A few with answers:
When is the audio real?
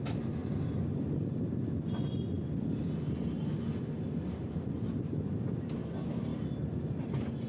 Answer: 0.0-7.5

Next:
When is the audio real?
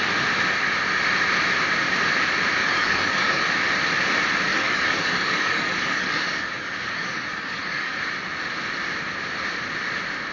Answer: 0.0-2.6; 3.4-4.5; 8.0-10.3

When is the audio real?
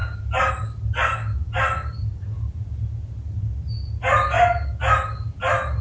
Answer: 0.0-5.8